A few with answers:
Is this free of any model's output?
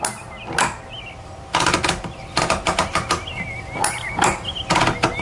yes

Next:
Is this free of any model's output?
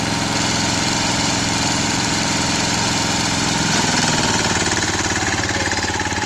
no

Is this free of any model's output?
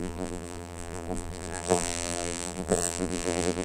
no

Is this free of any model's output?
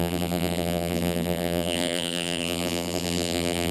no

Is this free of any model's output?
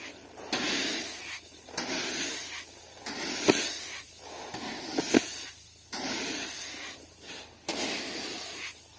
yes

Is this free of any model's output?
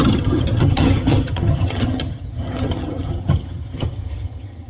no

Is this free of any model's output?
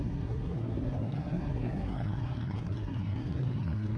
no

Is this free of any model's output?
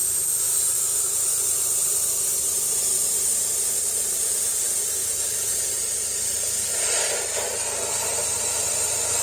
no